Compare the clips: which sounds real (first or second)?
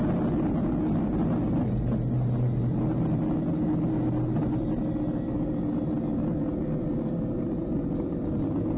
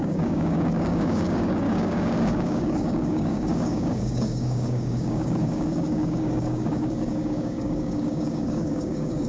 first